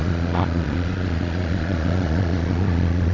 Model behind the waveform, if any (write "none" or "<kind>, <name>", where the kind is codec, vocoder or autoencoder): vocoder, Vocos